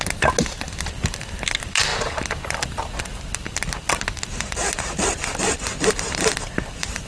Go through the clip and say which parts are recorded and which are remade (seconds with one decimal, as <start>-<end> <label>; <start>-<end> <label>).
0.0-7.1 recorded